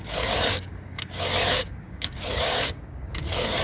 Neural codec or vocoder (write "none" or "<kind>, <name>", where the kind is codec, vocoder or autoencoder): codec, DAC